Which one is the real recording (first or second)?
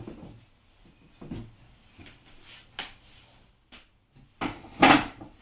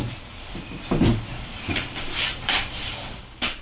first